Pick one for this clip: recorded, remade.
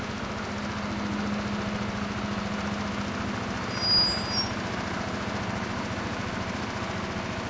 recorded